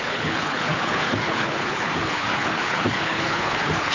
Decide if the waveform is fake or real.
fake